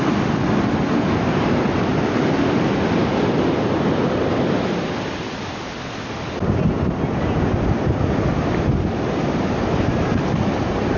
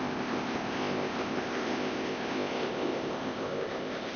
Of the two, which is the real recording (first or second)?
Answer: first